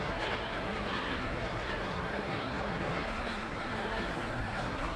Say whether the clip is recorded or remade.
remade